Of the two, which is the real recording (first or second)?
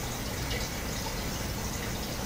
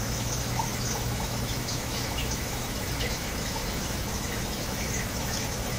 first